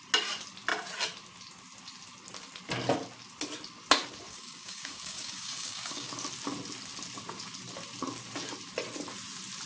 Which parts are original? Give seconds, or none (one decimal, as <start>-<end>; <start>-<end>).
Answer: 0.0-4.3; 6.1-9.7